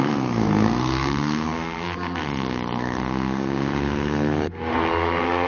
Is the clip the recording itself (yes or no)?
no